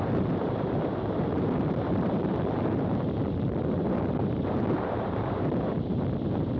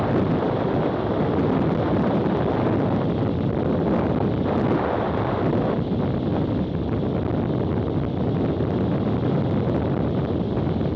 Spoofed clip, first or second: first